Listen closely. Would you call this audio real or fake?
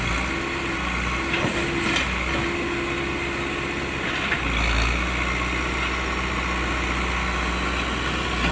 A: real